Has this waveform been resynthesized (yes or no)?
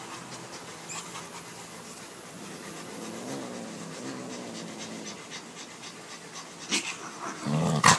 no